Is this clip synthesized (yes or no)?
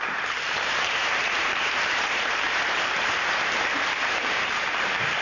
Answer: yes